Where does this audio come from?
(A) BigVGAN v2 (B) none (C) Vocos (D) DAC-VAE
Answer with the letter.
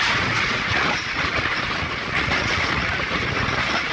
C